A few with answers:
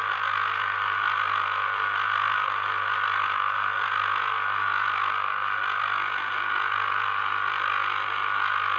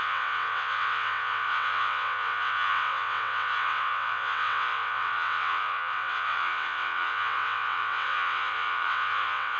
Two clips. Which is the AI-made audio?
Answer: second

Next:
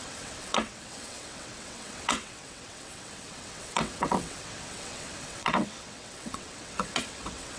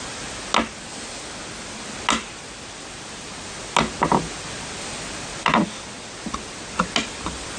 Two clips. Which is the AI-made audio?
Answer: first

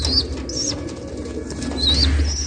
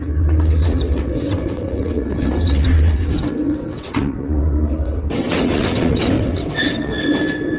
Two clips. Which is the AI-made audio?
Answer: second